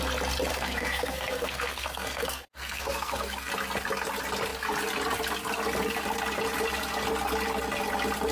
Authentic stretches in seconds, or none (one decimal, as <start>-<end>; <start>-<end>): 0.0-0.5; 3.5-8.3